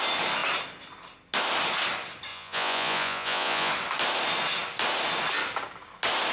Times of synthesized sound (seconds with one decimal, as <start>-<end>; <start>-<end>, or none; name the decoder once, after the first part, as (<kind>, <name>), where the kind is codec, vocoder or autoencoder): 2.3-3.7 (vocoder, Vocos)